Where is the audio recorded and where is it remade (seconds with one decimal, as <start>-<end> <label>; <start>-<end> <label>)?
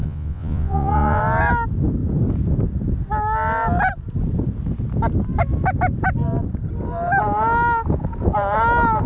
0.0-1.2 remade; 1.2-9.1 recorded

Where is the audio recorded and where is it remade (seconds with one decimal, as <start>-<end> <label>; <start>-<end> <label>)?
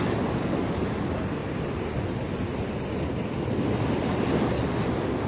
0.0-5.3 recorded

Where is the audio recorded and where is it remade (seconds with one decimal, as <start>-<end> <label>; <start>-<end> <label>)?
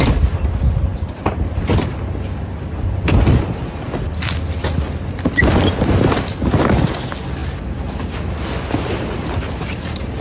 0.0-10.2 recorded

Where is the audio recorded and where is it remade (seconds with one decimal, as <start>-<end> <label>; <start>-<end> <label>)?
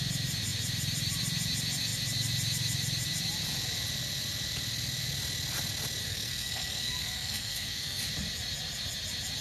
0.0-6.0 recorded; 6.0-8.0 remade; 8.0-9.4 recorded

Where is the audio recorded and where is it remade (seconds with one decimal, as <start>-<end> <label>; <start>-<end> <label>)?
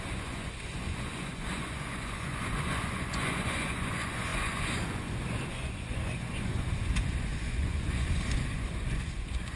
0.0-9.6 remade